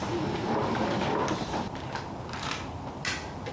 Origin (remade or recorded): recorded